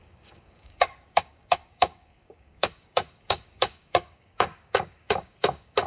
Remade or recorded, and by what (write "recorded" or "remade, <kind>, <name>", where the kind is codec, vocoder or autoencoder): remade, codec, DAC